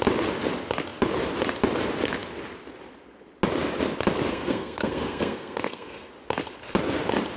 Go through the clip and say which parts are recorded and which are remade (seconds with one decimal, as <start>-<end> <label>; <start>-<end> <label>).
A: 0.0-4.3 recorded; 4.3-6.1 remade; 6.1-7.4 recorded